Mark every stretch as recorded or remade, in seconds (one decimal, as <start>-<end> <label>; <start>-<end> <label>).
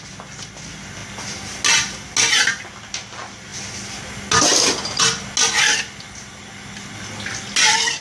0.0-8.0 recorded